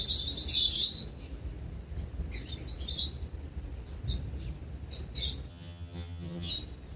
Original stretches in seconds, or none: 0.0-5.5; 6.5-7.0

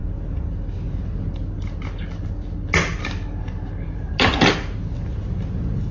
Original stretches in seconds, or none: 0.0-5.9